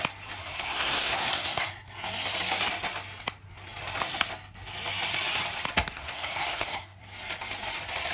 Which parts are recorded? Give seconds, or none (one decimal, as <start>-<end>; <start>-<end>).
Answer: 0.0-0.4; 1.7-5.9; 7.0-8.1